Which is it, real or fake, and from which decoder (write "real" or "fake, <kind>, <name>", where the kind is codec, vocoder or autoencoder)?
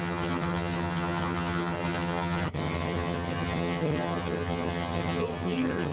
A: fake, vocoder, HiFi-GAN